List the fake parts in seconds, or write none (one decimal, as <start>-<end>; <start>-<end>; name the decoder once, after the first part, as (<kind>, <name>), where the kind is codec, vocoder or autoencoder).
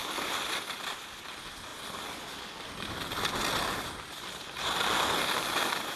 none